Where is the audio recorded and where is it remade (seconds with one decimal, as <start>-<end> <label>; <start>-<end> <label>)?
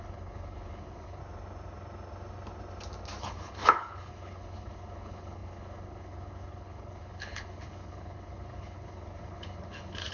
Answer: 0.0-1.2 remade; 1.2-3.2 recorded; 3.2-10.1 remade